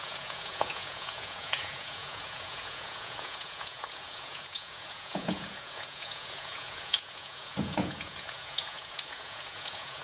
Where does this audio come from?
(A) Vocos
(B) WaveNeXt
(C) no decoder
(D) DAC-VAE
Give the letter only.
A